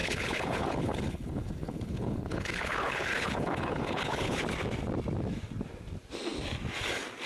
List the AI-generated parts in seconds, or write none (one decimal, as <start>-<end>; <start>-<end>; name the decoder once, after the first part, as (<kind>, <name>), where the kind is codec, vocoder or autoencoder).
0.0-4.4 (codec, HILCodec)